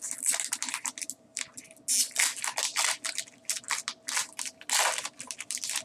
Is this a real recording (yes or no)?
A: yes